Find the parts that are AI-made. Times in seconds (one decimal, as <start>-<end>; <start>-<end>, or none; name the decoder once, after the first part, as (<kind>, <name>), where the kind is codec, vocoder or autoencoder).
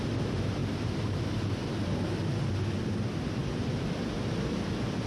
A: 0.6-1.4 (vocoder, BigVGAN v2)